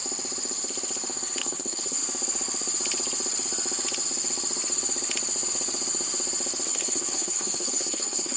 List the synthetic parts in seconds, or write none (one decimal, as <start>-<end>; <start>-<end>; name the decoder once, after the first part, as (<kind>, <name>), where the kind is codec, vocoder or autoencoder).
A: 1.4-2.0 (codec, HILCodec); 6.7-8.4